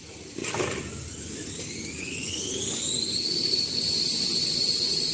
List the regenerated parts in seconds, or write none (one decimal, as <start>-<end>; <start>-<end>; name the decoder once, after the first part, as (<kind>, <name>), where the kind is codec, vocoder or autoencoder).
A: 2.0-2.6 (codec, HILCodec)